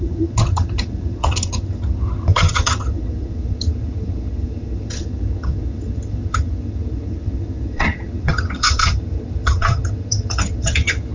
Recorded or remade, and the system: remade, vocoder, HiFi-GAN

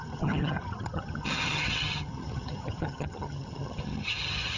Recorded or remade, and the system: remade, vocoder, HiFi-GAN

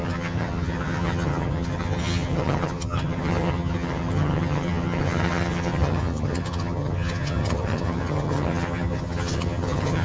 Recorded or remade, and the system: remade, vocoder, HiFi-GAN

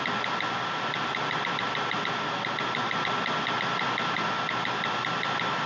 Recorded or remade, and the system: recorded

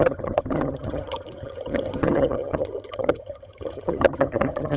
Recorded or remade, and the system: remade, vocoder, HiFi-GAN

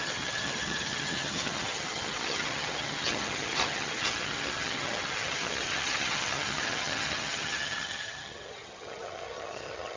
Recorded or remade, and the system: remade, vocoder, HiFi-GAN